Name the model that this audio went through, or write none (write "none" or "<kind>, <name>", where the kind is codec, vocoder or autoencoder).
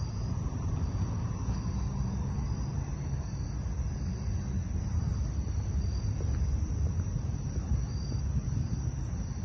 none